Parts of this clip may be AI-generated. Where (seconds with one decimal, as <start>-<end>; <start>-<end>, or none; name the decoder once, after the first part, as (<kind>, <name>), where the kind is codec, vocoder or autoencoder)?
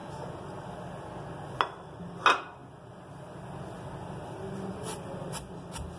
none